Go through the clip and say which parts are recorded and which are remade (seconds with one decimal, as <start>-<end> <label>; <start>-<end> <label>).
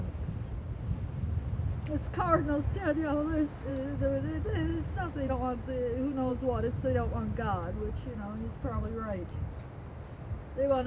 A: 0.0-10.9 recorded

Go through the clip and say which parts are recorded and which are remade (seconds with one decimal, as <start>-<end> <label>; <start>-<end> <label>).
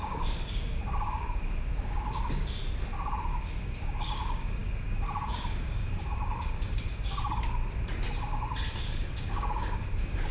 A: 0.0-2.6 remade; 2.6-3.3 recorded; 3.3-7.6 remade; 7.6-8.8 recorded; 8.8-10.3 remade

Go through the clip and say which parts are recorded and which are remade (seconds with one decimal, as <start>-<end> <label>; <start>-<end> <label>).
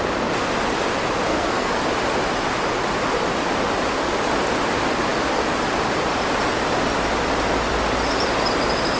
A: 0.0-1.3 recorded; 1.3-1.8 remade; 1.8-9.0 recorded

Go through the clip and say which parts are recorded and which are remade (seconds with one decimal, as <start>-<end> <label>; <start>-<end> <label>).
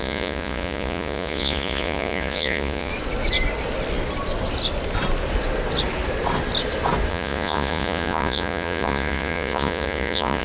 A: 0.0-2.9 remade; 2.9-7.1 recorded; 7.1-10.4 remade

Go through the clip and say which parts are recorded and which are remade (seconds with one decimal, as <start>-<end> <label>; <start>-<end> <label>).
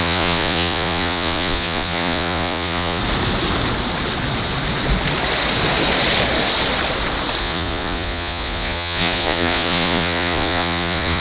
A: 0.0-3.0 remade; 3.0-7.4 recorded; 7.4-11.2 remade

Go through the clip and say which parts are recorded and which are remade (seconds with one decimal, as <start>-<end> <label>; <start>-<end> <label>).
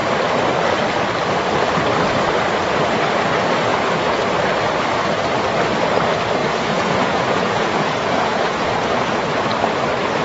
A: 0.0-3.7 recorded; 3.7-4.2 remade; 4.2-6.4 recorded; 6.4-9.3 remade; 9.3-10.2 recorded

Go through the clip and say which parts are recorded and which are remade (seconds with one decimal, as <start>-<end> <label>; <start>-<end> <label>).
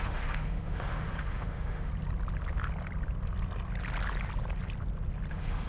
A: 0.0-1.9 remade; 1.9-5.3 recorded; 5.3-5.7 remade